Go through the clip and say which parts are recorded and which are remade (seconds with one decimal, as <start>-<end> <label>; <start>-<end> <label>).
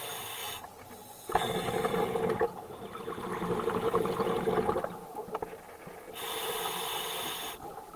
0.0-8.0 recorded